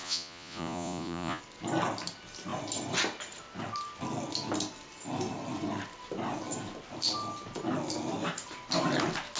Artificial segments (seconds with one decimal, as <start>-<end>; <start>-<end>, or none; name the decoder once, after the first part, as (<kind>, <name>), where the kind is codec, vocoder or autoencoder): 0.0-1.4 (vocoder, Vocos)